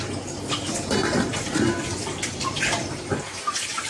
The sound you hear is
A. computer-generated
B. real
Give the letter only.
B